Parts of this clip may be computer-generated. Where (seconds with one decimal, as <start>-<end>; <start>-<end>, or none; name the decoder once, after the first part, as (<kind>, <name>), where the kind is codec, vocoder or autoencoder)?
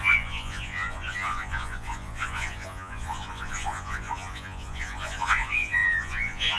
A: 0.0-6.6 (vocoder, Vocos)